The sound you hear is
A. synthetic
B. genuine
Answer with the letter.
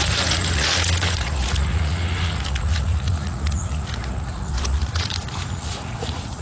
A